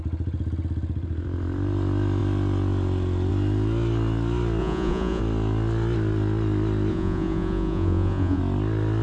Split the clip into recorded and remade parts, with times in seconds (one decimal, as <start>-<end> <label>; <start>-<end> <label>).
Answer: 0.0-4.6 recorded; 4.6-5.2 remade; 5.2-6.9 recorded; 6.9-8.4 remade; 8.4-9.0 recorded